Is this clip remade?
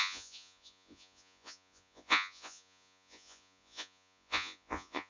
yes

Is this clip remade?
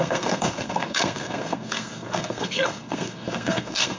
yes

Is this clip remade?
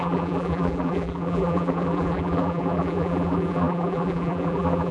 yes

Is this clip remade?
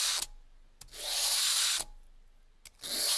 no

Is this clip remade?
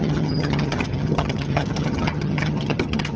yes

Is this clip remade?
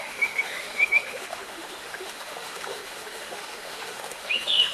yes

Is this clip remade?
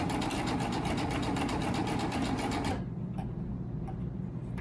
no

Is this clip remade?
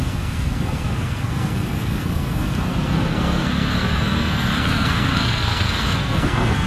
yes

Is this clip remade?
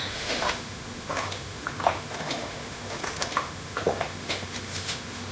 yes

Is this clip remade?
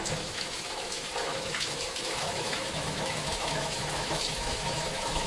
yes